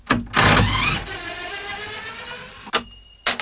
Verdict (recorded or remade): recorded